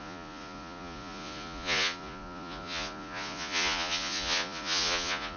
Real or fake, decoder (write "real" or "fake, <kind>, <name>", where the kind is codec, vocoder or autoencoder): fake, vocoder, Vocos